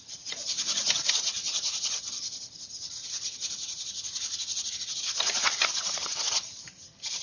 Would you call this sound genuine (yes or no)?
no